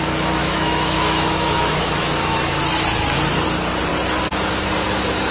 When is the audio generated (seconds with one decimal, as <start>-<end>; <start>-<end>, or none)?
0.4-2.6